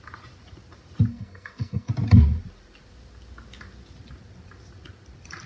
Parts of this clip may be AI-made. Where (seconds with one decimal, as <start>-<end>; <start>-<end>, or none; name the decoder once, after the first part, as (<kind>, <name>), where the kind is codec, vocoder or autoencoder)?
1.1-1.9 (codec, SNAC)